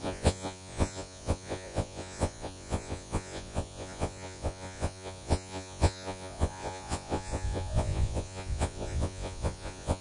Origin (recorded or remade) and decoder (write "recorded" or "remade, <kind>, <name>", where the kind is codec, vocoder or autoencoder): remade, vocoder, Vocos